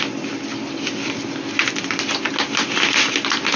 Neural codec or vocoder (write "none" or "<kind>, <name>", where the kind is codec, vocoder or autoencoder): none